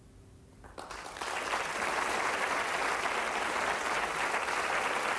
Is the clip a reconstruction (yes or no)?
no